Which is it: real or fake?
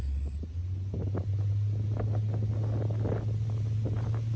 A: real